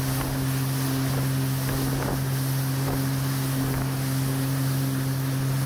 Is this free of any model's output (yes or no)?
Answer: yes